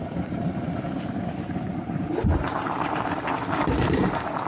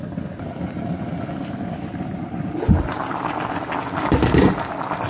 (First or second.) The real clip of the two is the second